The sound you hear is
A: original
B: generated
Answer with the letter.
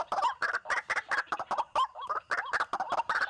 B